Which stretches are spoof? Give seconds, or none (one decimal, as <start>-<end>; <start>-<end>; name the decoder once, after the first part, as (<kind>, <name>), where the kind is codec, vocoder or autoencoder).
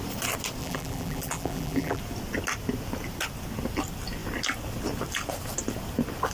0.6-2.0 (vocoder, BigVGAN v2)